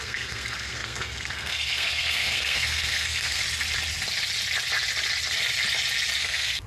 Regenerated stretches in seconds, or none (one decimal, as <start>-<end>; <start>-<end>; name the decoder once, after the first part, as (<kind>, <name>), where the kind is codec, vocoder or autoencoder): 0.0-3.4 (codec, SNAC); 6.2-6.7